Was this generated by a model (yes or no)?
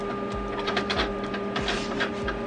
no